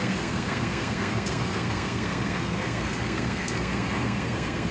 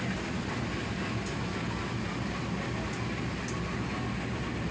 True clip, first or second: second